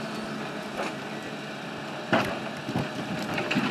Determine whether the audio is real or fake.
real